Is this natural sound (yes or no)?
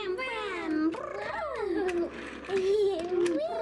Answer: yes